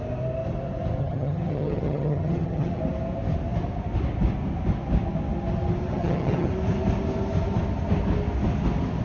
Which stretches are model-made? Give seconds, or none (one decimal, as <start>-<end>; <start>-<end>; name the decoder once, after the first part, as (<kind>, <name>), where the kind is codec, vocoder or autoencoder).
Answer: 1.0-2.8 (vocoder, HiFi-GAN); 5.9-6.5